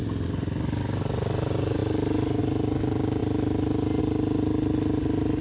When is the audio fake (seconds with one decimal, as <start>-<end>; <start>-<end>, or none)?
none